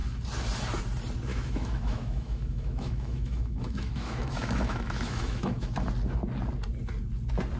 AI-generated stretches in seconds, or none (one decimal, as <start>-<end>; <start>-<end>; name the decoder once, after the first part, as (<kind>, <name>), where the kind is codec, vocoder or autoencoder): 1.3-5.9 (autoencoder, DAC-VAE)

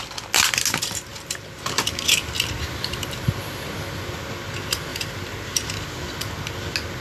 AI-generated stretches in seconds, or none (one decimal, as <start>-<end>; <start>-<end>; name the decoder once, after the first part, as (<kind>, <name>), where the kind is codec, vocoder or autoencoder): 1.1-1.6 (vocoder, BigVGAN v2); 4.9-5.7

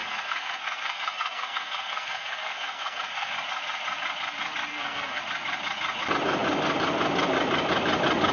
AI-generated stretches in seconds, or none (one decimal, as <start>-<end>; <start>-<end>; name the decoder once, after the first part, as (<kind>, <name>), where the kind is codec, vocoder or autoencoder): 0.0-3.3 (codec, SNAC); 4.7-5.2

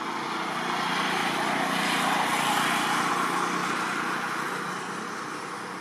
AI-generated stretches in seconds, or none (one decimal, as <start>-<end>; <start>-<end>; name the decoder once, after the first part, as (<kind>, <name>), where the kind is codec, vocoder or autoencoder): none

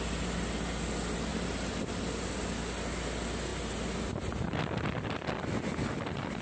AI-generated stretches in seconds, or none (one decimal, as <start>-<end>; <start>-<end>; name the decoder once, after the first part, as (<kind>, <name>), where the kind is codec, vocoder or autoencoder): none

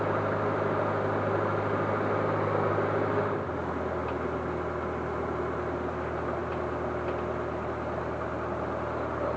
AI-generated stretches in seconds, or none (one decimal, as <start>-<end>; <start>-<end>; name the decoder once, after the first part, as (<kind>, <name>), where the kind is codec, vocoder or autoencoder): none